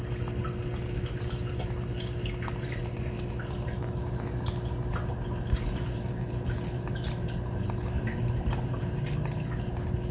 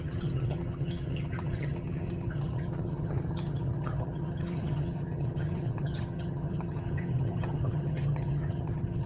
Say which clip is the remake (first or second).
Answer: second